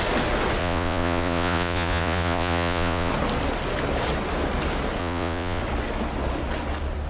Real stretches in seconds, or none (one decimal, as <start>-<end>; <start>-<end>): 0.0-0.6; 3.1-5.0; 5.6-7.1